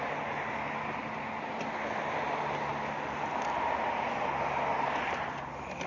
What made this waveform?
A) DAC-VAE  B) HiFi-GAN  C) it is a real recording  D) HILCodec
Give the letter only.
C